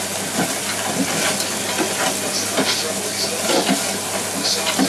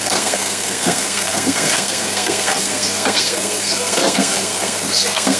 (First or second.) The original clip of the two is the first